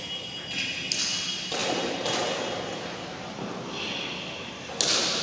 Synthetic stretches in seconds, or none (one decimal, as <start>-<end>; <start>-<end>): none